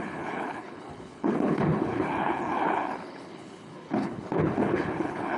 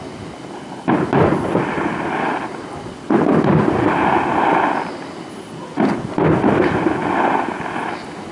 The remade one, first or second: first